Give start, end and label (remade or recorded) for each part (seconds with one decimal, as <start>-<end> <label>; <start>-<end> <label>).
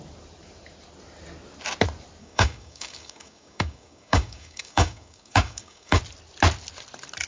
0.0-2.2 recorded; 2.2-6.0 remade; 6.0-7.3 recorded